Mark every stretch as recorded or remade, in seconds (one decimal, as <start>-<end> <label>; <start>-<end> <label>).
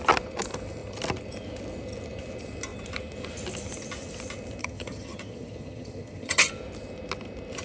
0.0-4.6 recorded; 4.6-6.5 remade; 6.5-7.6 recorded